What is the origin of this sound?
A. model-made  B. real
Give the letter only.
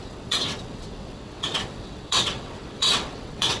A